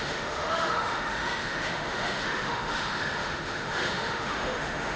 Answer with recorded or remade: remade